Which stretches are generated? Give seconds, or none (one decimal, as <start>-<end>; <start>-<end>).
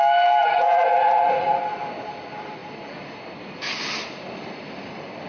0.4-1.6